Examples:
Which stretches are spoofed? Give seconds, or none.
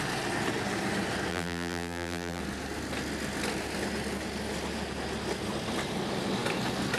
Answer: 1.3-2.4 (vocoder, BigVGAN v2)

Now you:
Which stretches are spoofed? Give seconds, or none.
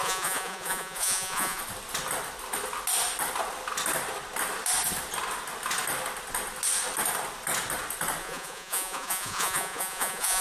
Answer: 0.0-1.6 (vocoder, Vocos); 8.2-10.4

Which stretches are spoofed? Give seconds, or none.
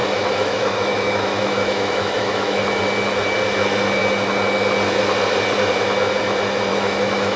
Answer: 0.0-2.8 (autoencoder, DAC-VAE); 6.7-7.4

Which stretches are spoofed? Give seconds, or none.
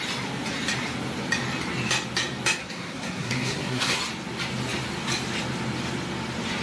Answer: 2.6-4.0 (codec, SNAC)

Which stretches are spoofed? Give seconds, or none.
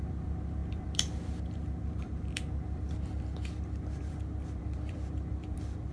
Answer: 0.0-5.9 (vocoder, BigVGAN v2)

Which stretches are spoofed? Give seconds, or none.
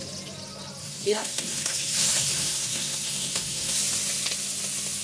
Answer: 0.8-3.8 (codec, SNAC)